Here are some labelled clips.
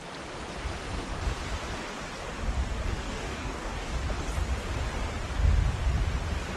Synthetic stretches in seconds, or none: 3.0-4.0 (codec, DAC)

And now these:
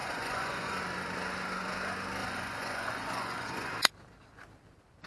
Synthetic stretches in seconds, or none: 0.0-0.8 (vocoder, Vocos); 2.2-3.7

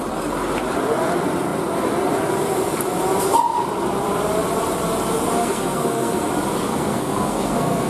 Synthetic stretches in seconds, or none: 5.4-6.3 (codec, SNAC); 6.7-7.9